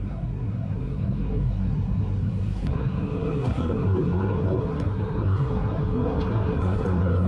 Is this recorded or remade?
remade